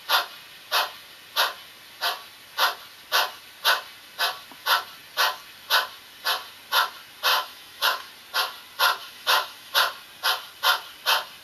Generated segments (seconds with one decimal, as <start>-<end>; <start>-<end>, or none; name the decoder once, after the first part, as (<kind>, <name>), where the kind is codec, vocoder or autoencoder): 7.3-8.1 (autoencoder, DAC-VAE); 9.0-9.7